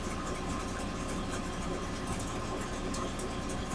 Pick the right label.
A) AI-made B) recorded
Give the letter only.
B